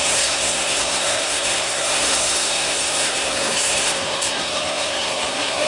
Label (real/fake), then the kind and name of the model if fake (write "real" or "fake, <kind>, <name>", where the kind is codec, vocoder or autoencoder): fake, codec, SNAC